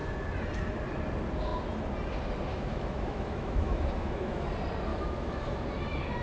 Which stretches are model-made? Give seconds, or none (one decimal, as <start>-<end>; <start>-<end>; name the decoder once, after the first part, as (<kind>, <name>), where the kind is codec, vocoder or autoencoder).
2.5-4.5 (autoencoder, DAC-VAE); 4.9-5.6